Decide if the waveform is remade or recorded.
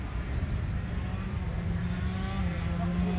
recorded